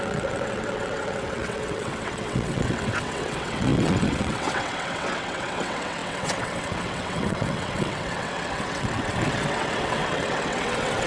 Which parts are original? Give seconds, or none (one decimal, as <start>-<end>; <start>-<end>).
none